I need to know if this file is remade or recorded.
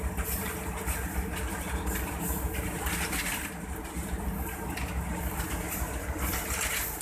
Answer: recorded